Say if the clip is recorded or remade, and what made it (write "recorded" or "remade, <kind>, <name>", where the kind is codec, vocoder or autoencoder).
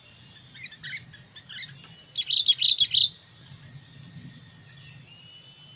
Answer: recorded